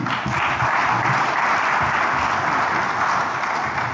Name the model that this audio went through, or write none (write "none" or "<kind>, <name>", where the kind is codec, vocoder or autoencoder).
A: none